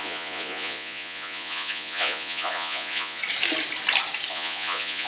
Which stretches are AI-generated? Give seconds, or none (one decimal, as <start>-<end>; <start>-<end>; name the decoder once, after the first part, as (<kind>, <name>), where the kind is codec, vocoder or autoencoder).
0.0-3.2 (vocoder, Vocos); 4.3-5.1